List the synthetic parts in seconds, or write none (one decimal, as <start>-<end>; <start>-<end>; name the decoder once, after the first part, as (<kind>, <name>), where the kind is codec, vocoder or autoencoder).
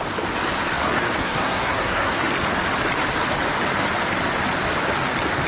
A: 1.2-2.3 (codec, SNAC)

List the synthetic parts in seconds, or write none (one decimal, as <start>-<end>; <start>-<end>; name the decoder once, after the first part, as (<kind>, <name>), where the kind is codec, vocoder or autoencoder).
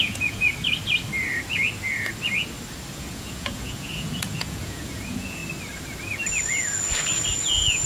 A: 0.0-0.5 (vocoder, Vocos); 2.9-5.4; 7.4-7.9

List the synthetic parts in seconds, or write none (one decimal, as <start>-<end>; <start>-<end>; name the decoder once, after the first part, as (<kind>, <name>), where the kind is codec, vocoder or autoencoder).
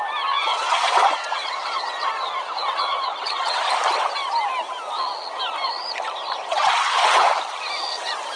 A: 0.5-3.6 (vocoder, WaveNeXt); 6.3-7.4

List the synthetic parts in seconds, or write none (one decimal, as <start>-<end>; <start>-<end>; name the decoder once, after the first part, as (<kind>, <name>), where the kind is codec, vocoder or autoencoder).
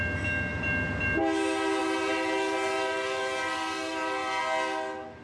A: 1.8-4.4 (vocoder, BigVGAN v2)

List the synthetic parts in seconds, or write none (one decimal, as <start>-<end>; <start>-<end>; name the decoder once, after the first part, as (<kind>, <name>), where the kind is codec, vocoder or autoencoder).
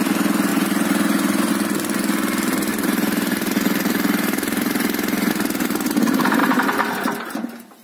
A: 0.5-1.5 (vocoder, BigVGAN v2); 2.7-5.3; 6.4-6.9